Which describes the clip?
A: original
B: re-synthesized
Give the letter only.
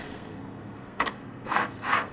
B